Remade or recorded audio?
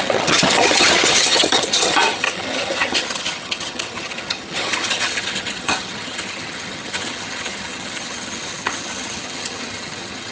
remade